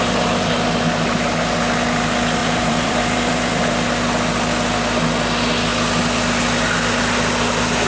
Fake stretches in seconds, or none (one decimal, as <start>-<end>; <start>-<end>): 2.4-3.6